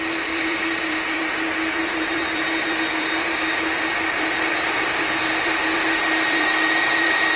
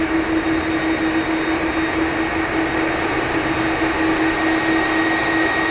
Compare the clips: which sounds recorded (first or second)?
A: second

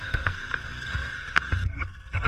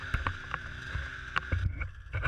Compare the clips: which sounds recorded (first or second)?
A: second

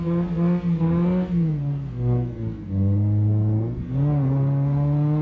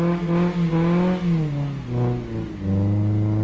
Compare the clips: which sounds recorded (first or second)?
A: second